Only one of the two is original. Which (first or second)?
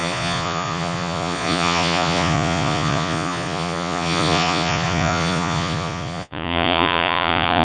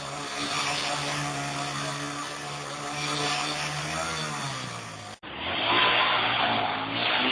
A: second